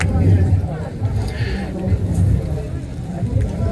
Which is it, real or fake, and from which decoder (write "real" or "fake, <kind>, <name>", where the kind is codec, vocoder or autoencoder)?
real